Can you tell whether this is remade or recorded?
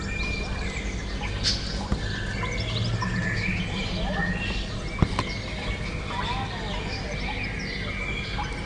recorded